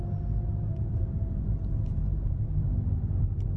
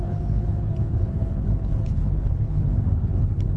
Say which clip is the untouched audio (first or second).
first